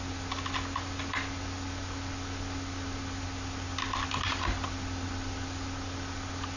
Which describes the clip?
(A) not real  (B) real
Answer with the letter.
B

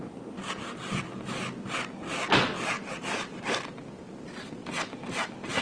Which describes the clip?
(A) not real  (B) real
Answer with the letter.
B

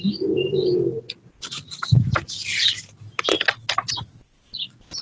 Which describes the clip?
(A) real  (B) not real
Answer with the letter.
A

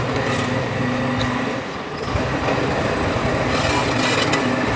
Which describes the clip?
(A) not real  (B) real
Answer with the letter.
B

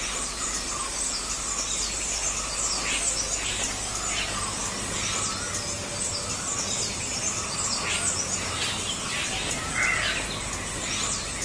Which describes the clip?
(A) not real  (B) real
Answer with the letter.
B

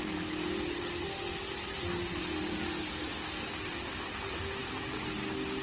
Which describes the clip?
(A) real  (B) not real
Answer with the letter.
A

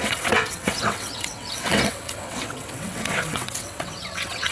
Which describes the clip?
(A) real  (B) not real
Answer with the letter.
B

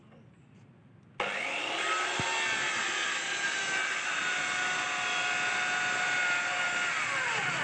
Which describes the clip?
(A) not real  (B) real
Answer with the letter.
B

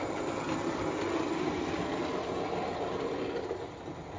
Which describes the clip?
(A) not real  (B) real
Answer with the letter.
B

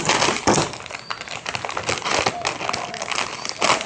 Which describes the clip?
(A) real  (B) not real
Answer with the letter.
A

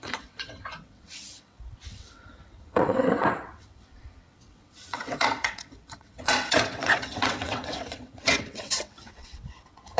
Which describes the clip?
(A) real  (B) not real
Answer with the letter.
B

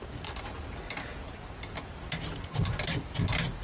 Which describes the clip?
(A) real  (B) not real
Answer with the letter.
A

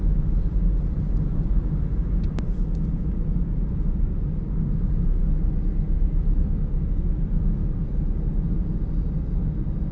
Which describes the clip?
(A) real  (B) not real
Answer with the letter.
A